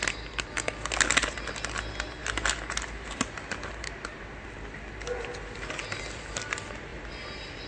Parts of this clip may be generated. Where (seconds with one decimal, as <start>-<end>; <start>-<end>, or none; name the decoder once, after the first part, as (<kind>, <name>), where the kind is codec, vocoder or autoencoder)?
none